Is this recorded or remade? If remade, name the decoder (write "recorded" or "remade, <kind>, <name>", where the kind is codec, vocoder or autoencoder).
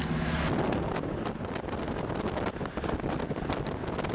recorded